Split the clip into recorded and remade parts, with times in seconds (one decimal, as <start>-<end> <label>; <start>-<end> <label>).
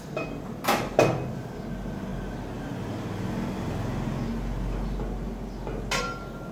0.0-6.5 recorded